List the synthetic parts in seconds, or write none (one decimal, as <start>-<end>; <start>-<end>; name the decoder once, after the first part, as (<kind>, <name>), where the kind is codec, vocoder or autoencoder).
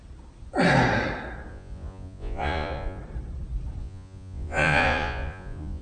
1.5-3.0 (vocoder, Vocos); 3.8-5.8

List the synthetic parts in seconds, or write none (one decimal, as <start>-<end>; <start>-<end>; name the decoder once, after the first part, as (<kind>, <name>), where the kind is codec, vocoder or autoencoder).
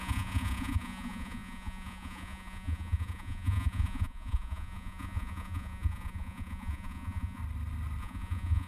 0.0-7.4 (vocoder, Vocos); 8.0-8.7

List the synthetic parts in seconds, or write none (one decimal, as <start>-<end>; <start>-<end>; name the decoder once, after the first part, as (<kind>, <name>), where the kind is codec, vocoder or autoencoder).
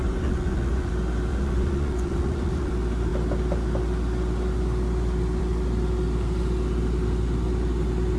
0.0-0.9 (vocoder, Vocos); 1.3-2.7